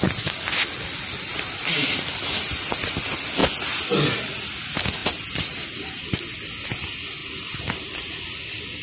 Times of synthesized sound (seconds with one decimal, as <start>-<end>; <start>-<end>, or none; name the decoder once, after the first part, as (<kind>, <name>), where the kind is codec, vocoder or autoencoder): 1.3-2.9 (vocoder, BigVGAN v2); 5.0-6.2; 7.2-8.2